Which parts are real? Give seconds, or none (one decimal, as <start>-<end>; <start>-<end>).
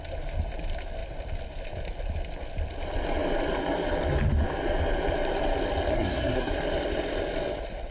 0.0-5.9; 6.5-7.9